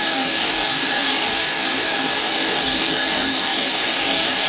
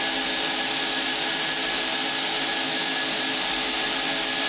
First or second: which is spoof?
first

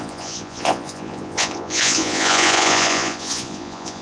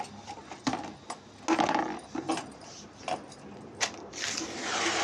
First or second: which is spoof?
first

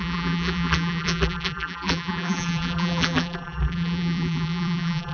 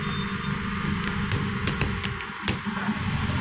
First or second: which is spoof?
first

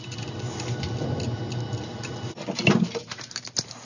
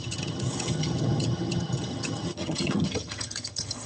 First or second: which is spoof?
second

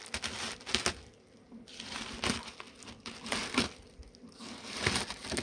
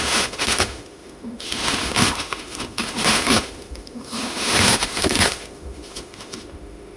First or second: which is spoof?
second